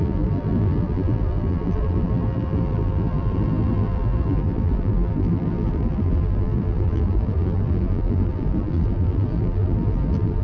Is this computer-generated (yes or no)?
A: yes